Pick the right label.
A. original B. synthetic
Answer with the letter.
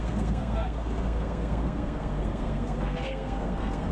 B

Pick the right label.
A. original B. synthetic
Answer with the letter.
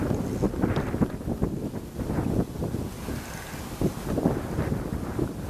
A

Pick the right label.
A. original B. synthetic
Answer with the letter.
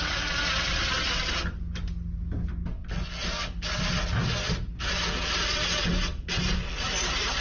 A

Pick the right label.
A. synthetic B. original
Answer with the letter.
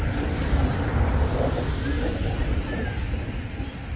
B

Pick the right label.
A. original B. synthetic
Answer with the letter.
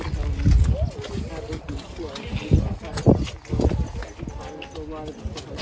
A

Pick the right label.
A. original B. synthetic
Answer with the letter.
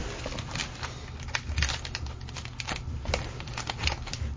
A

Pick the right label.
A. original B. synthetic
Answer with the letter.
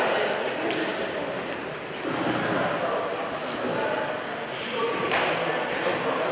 A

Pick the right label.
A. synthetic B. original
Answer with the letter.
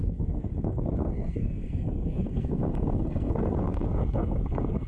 A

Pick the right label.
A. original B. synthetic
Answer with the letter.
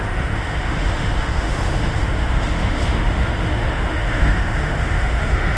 B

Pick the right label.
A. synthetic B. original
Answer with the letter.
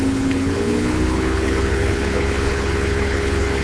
A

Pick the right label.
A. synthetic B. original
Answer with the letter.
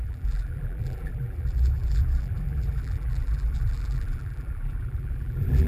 A